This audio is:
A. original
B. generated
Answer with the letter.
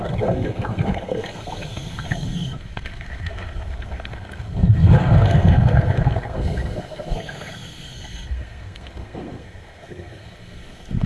B